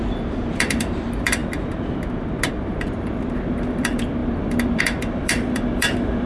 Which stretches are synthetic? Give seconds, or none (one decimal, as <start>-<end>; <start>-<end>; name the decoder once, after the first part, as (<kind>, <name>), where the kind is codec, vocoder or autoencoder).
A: 0.0-1.4 (vocoder, BigVGAN v2); 2.5-6.3